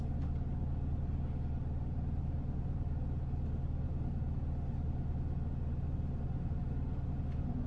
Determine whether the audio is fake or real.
real